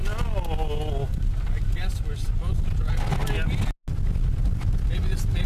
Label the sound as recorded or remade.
recorded